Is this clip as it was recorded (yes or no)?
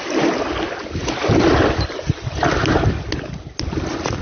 yes